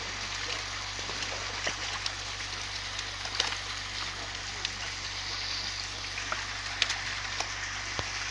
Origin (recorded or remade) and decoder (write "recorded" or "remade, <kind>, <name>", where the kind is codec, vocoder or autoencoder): recorded